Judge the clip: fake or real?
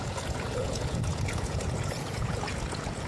fake